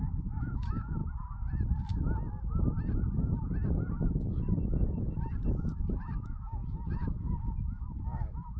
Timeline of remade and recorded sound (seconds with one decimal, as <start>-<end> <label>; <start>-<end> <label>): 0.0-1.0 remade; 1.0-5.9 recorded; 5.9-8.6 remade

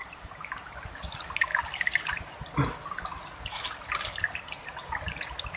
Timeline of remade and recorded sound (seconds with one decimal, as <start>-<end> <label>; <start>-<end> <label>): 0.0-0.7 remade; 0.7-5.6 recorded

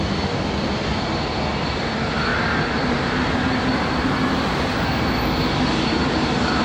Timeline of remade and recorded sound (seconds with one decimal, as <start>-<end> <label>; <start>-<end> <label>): 0.0-2.3 recorded; 2.3-4.6 remade; 4.6-6.6 recorded